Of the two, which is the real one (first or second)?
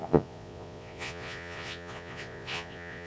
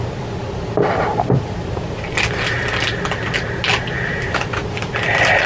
second